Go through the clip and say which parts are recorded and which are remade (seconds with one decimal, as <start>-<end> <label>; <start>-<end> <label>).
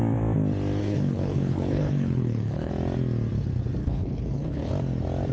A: 0.0-0.8 recorded; 0.8-2.7 remade; 2.7-3.8 recorded; 3.8-4.7 remade; 4.7-5.3 recorded